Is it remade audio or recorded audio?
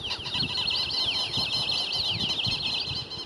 recorded